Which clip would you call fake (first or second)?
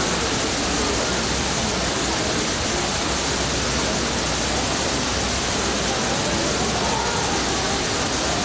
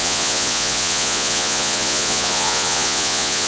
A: second